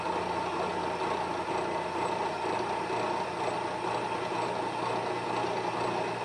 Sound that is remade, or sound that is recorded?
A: recorded